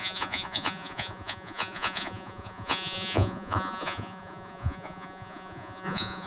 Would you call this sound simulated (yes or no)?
yes